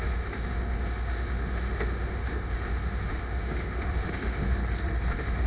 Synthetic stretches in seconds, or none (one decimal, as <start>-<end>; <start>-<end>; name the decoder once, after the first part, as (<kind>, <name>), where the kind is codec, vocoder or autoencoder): 0.0-4.6 (autoencoder, DAC-VAE); 5.1-5.5